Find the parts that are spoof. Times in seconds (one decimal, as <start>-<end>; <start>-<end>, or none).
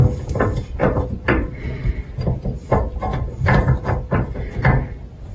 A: 0.8-1.5; 3.1-4.5